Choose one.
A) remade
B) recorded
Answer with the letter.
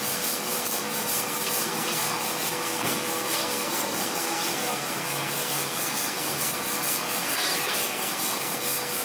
A